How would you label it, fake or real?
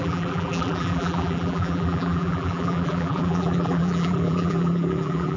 fake